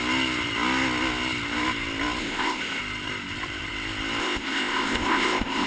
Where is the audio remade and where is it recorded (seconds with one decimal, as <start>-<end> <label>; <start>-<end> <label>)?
0.0-2.2 recorded; 2.2-2.8 remade; 2.8-4.2 recorded; 4.2-5.7 remade